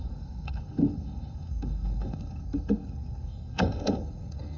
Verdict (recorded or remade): remade